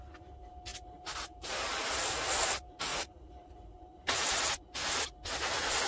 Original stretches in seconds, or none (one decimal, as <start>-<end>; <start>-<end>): 0.0-0.7; 1.5-2.9; 4.4-5.9